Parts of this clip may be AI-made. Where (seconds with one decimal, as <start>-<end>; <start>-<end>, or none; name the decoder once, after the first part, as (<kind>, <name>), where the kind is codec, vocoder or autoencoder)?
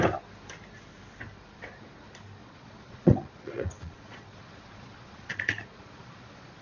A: 2.4-6.6 (vocoder, Vocos)